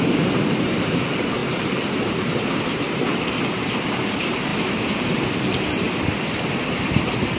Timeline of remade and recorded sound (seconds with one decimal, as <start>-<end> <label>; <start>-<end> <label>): 0.0-4.5 remade; 4.5-6.4 recorded; 6.4-7.4 remade

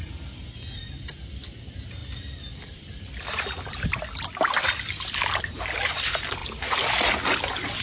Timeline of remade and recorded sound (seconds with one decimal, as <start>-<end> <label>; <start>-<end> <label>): 0.0-2.0 recorded; 2.0-5.6 remade; 5.6-6.4 recorded; 6.4-7.1 remade; 7.1-7.8 recorded

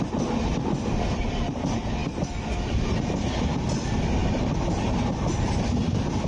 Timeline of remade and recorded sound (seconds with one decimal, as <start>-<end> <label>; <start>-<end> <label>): 0.0-6.3 recorded

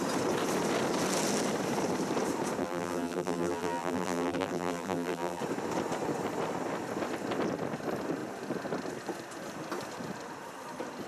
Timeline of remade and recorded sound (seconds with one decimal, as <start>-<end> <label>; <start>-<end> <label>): 0.0-2.6 recorded; 2.6-5.4 remade; 5.4-11.1 recorded

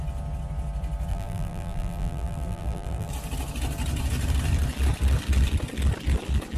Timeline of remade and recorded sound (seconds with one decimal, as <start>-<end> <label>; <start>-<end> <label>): 0.0-1.1 recorded; 1.1-3.1 remade; 3.1-6.6 recorded

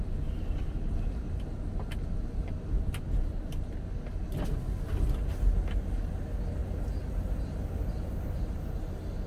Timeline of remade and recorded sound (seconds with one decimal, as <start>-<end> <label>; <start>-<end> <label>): 0.0-9.3 recorded